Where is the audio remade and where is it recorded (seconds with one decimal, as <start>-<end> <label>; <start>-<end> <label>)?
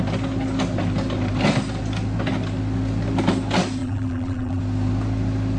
0.0-3.8 recorded; 3.8-4.6 remade; 4.6-5.6 recorded